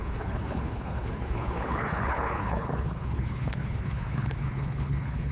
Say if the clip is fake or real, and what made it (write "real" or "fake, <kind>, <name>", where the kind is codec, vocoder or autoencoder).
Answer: fake, codec, HILCodec